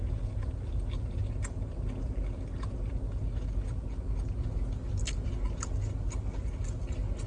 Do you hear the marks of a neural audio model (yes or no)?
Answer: no